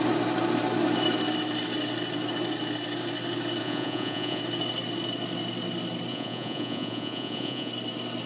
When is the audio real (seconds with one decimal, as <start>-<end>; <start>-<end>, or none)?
0.0-3.6; 4.4-6.1; 7.7-8.2